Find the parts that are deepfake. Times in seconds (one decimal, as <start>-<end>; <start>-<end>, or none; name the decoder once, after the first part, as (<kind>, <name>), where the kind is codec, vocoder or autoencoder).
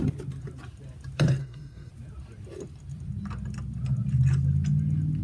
1.4-1.9 (codec, SNAC)